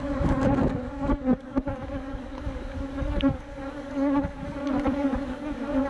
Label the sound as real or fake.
fake